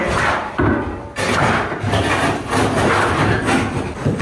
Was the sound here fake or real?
real